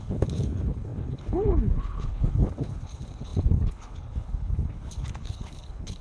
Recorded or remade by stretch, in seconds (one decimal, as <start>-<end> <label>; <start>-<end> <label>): 0.0-6.0 remade